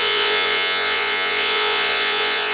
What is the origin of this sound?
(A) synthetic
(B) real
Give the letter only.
A